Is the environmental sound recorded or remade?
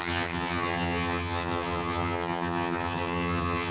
remade